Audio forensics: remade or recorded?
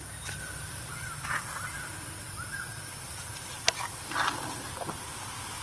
recorded